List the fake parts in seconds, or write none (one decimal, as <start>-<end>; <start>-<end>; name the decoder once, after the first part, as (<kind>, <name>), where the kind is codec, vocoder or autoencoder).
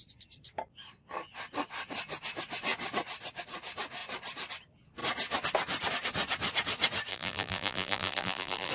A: 7.1-8.7 (vocoder, BigVGAN v2)